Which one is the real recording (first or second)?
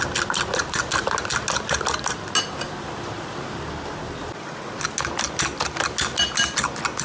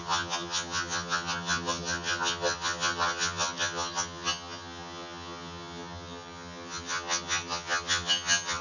first